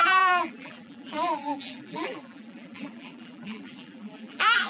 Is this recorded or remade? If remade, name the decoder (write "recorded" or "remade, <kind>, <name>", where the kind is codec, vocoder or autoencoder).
remade, vocoder, BigVGAN v2